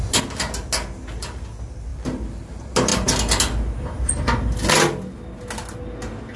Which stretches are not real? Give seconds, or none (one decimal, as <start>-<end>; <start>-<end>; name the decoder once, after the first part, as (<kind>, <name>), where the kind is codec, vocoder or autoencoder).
1.9-2.4 (vocoder, BigVGAN v2)